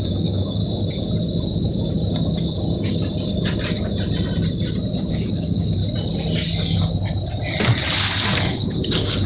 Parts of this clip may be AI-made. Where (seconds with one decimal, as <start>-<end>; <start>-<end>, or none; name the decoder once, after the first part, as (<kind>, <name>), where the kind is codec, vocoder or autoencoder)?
0.0-0.6 (codec, DAC); 5.1-5.8; 8.5-9.3